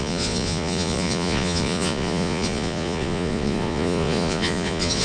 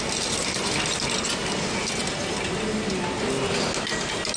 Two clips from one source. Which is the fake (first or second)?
first